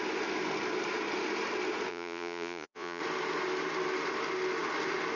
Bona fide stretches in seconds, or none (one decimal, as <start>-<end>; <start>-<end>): 0.0-1.9; 3.0-5.2